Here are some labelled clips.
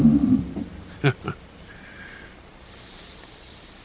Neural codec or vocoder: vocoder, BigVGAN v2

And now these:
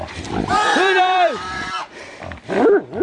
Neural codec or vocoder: vocoder, BigVGAN v2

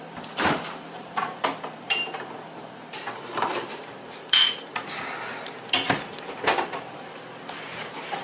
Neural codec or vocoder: vocoder, BigVGAN v2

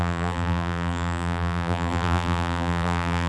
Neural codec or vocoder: vocoder, BigVGAN v2